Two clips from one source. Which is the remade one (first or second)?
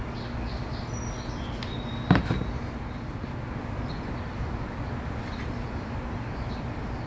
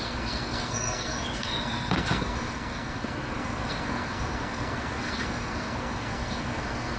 second